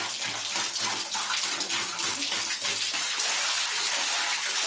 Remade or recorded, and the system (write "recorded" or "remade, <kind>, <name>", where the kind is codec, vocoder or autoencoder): recorded